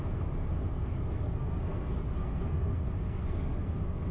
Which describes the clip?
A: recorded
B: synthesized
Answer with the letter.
B